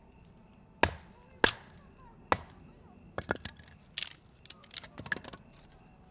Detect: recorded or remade recorded